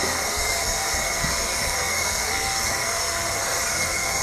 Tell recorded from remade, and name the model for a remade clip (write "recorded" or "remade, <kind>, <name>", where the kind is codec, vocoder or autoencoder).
remade, codec, SNAC